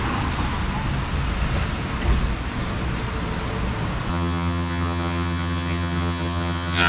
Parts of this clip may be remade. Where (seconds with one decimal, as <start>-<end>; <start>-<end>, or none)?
4.1-6.9